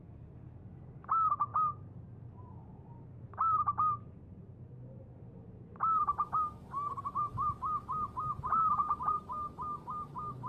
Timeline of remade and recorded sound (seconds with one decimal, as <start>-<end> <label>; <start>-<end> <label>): 0.0-10.5 recorded